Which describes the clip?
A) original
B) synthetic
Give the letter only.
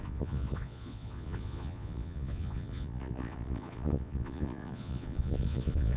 B